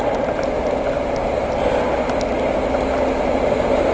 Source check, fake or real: real